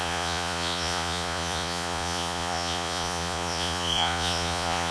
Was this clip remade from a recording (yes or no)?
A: yes